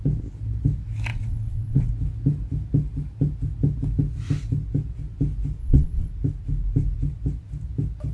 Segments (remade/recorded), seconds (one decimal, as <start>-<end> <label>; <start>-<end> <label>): 0.0-1.1 recorded; 1.1-1.9 remade; 1.9-5.6 recorded; 5.6-6.1 remade; 6.1-8.1 recorded